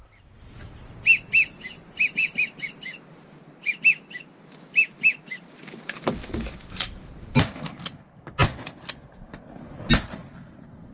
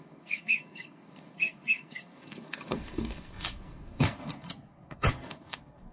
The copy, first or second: second